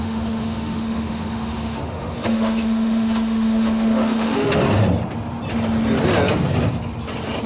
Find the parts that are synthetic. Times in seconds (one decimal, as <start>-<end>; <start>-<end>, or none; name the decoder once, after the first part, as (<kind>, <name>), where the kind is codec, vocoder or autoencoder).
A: 0.0-4.5 (autoencoder, DAC-VAE)